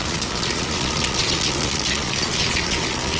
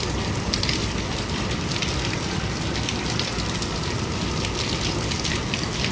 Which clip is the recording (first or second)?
second